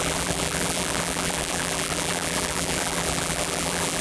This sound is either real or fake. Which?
fake